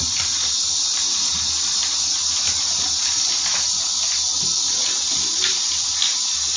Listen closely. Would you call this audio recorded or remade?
recorded